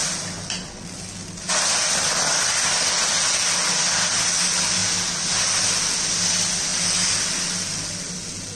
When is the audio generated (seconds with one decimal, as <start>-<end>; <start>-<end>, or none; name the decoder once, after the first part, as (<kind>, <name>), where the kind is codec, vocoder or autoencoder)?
none